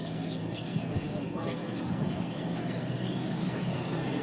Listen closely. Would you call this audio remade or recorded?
remade